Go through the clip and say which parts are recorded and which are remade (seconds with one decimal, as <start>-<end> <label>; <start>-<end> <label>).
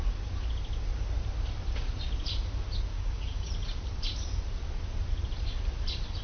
0.0-2.9 recorded; 2.9-3.5 remade; 3.5-6.2 recorded